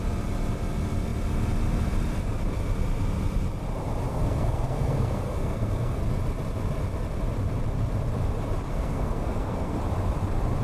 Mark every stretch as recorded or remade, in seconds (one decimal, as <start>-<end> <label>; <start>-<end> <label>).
0.0-4.1 recorded; 4.1-6.0 remade; 6.0-8.7 recorded; 8.7-9.8 remade; 9.8-10.6 recorded